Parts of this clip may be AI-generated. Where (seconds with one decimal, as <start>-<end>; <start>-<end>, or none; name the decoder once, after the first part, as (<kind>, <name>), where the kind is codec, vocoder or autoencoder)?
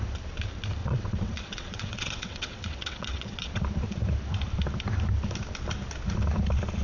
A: 0.8-3.6 (vocoder, WaveNeXt)